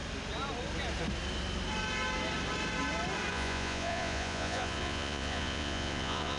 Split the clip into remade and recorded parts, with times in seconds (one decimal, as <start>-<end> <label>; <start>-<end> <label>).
0.0-3.3 recorded; 3.3-6.4 remade